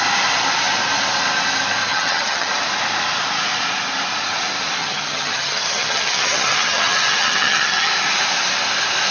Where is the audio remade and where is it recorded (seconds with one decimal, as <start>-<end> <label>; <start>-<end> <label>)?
0.0-1.9 recorded; 1.9-2.5 remade; 2.5-4.8 recorded; 4.8-7.9 remade; 7.9-9.1 recorded